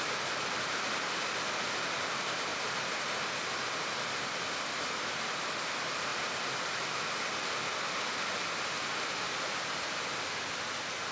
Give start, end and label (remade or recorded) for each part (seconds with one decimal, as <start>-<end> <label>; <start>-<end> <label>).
0.0-11.1 recorded